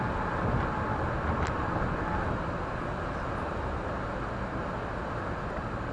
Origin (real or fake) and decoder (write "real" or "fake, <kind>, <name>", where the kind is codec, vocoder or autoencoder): real